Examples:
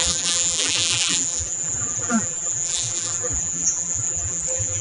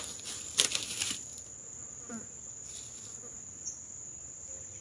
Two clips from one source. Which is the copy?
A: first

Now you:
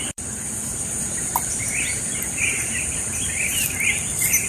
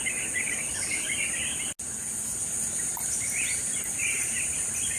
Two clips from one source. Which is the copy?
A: first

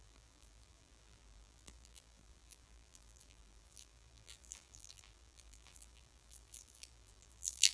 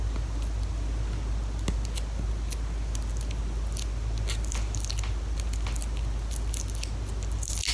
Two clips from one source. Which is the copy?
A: first